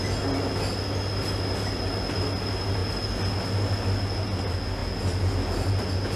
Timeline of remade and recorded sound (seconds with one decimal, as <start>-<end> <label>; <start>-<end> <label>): 0.0-6.2 recorded